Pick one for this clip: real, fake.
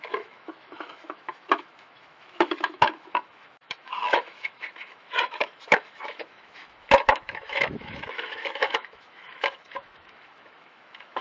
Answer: fake